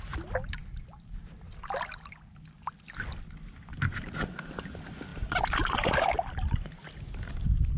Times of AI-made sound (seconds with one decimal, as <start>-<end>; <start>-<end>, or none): none

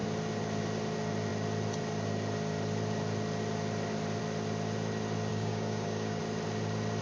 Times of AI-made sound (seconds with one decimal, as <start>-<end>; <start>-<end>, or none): 5.3-6.2

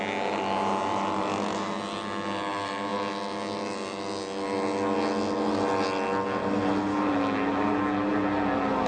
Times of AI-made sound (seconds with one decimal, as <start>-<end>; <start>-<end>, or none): none

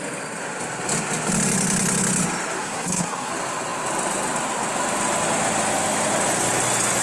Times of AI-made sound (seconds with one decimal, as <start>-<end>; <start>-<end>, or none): 2.6-3.3

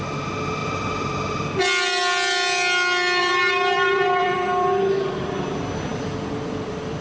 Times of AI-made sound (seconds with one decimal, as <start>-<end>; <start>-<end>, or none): 0.6-1.6; 3.2-5.2; 5.9-7.0

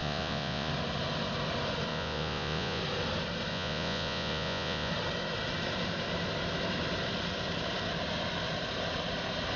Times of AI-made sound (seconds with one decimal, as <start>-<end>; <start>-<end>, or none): 0.0-0.7; 1.9-2.8; 3.5-4.9